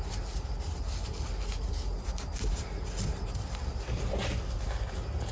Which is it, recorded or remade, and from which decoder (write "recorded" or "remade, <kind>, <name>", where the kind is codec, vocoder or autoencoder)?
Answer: recorded